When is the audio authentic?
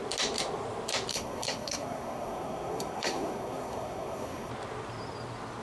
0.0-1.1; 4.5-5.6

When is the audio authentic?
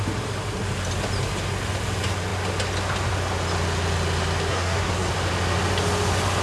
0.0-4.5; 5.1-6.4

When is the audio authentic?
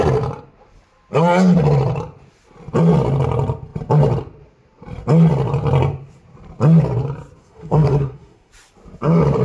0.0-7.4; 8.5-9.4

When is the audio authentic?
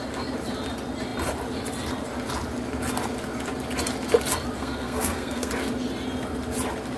0.0-4.6; 5.5-7.0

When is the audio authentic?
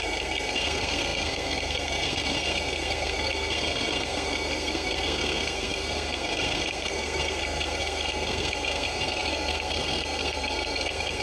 none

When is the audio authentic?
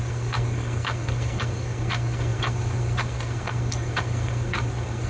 none